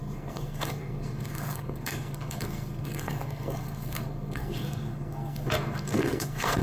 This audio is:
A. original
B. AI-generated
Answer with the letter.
B